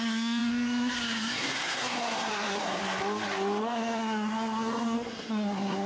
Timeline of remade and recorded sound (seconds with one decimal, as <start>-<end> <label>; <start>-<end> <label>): 0.0-2.8 remade; 2.8-3.6 recorded; 3.6-5.9 remade